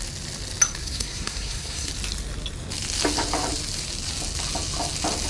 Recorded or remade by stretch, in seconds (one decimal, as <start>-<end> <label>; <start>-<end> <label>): 0.0-0.8 recorded; 0.8-1.9 remade; 1.9-5.3 recorded